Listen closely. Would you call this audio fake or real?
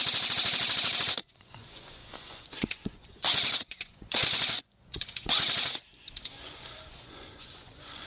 fake